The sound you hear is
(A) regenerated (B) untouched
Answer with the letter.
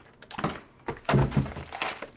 B